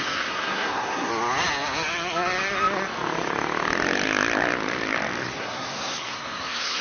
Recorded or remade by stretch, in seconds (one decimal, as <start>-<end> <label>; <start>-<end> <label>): 0.0-1.1 remade; 1.1-5.2 recorded; 5.2-6.8 remade